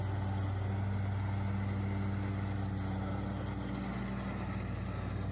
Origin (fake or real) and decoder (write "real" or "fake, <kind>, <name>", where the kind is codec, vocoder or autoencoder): real